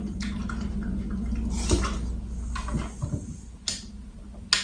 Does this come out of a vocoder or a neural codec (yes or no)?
no